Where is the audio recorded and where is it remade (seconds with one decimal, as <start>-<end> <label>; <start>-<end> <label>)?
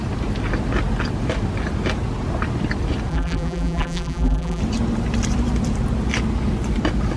0.0-3.1 recorded; 3.1-4.6 remade; 4.6-7.2 recorded